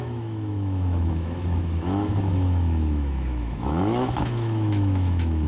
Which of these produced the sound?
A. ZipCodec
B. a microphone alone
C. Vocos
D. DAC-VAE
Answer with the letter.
D